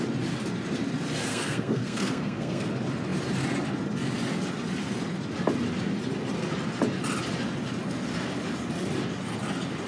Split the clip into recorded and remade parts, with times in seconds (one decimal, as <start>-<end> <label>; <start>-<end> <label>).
0.0-1.3 recorded; 1.3-2.7 remade; 2.7-9.9 recorded